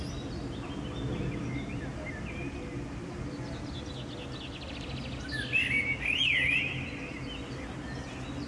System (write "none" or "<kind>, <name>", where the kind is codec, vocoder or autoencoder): none